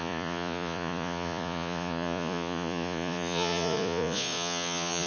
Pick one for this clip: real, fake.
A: fake